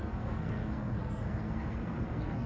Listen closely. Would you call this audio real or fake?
fake